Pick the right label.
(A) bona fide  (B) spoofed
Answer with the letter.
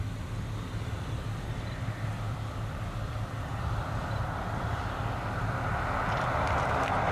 A